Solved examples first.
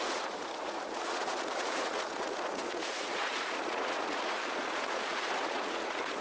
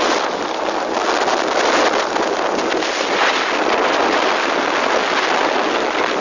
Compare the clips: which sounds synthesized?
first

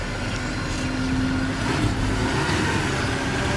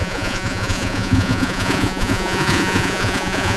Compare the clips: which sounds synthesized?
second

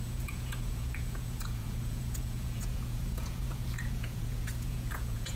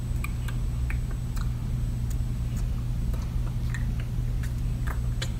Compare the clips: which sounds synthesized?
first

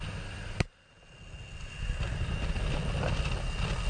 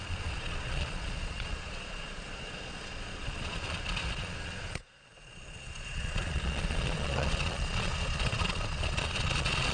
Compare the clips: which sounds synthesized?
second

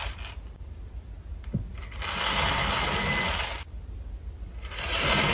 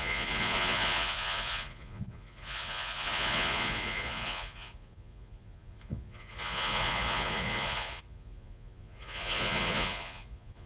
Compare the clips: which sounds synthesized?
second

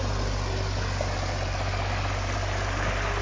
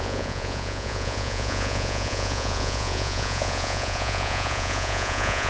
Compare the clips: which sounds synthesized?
second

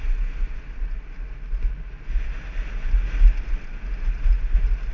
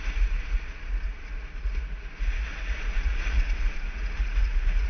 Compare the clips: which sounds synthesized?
second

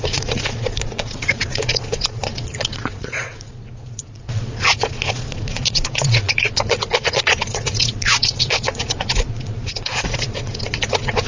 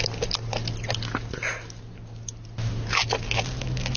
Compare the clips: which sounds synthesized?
first